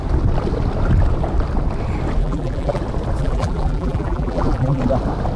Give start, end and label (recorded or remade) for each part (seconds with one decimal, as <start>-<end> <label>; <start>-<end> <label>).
0.0-2.2 recorded; 2.2-2.8 remade; 2.8-3.2 recorded; 3.2-4.8 remade; 4.8-5.4 recorded